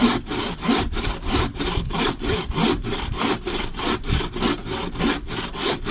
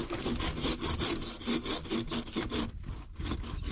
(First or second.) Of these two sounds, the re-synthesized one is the first